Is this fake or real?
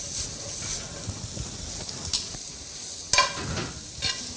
real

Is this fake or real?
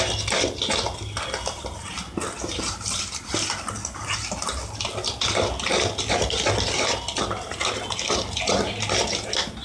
real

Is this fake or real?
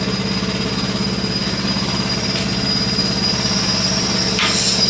real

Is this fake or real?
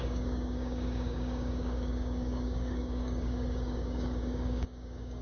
fake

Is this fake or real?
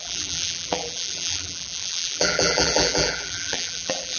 fake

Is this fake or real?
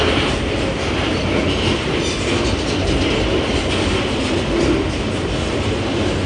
real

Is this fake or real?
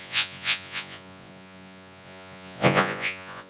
fake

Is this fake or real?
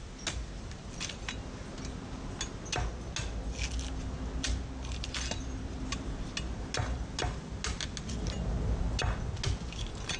real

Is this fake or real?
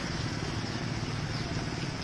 real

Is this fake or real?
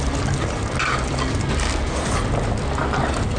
real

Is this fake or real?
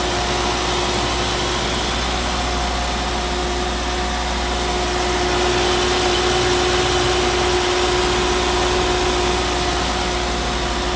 real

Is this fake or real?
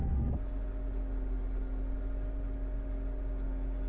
real